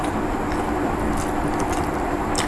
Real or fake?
real